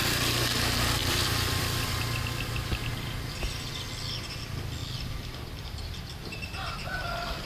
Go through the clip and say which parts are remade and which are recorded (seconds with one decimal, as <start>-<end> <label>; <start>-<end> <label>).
0.0-1.0 recorded; 1.0-3.3 remade; 3.3-4.8 recorded; 4.8-7.1 remade; 7.1-7.5 recorded